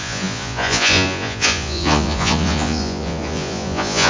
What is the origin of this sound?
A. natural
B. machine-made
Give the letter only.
B